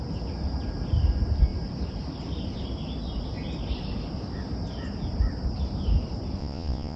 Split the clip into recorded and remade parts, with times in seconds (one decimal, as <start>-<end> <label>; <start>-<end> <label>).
0.0-6.4 recorded; 6.4-7.0 remade

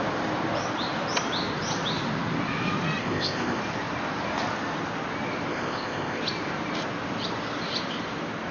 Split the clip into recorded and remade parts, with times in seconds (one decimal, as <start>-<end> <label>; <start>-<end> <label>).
0.0-3.0 recorded; 3.0-3.6 remade; 3.6-5.5 recorded; 5.5-6.2 remade; 6.2-8.5 recorded

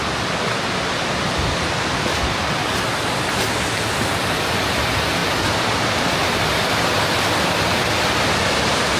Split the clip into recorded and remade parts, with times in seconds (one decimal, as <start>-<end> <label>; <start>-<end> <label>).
0.0-5.2 recorded; 5.2-7.3 remade; 7.3-9.0 recorded

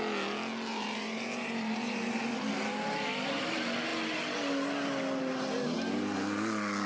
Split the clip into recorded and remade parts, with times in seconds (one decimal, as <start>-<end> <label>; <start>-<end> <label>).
0.0-0.7 recorded; 0.7-2.5 remade; 2.5-6.9 recorded

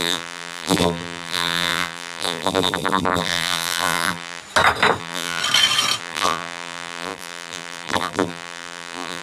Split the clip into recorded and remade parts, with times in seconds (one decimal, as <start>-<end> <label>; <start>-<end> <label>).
0.0-4.4 remade; 4.4-5.0 recorded; 5.0-5.4 remade; 5.4-6.0 recorded; 6.0-9.2 remade

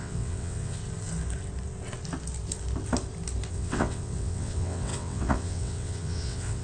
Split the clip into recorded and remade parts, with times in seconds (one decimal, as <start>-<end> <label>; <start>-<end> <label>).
0.0-0.8 remade; 0.8-3.5 recorded; 3.5-6.6 remade

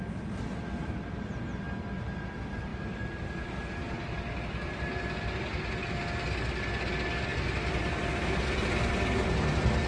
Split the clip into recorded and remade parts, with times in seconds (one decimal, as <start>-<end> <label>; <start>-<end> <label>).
0.0-9.9 recorded